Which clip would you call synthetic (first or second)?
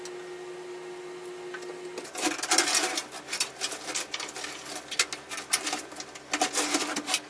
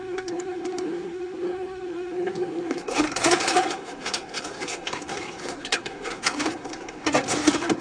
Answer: second